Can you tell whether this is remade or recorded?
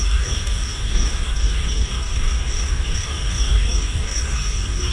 remade